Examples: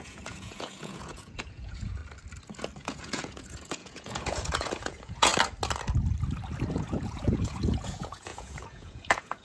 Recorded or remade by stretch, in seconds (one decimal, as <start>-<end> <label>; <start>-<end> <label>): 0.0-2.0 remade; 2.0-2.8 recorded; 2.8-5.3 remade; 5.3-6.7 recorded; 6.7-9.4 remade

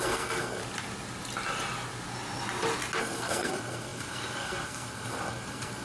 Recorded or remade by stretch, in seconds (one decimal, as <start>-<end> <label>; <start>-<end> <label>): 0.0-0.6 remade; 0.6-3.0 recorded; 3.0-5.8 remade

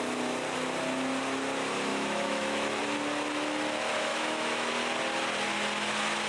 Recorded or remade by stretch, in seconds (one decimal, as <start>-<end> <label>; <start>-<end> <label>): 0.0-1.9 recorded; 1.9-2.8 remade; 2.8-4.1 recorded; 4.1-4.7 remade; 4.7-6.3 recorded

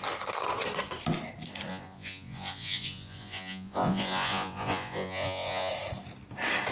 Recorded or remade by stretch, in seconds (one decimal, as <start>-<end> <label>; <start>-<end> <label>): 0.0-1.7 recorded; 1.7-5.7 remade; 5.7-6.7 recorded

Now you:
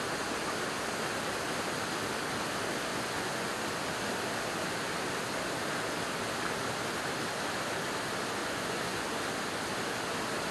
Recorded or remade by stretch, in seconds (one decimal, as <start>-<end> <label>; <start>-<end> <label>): 0.0-2.9 recorded; 2.9-3.6 remade; 3.6-8.4 recorded; 8.4-9.2 remade; 9.2-10.5 recorded